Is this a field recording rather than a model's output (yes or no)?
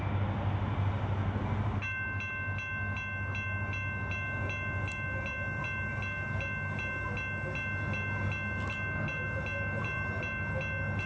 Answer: yes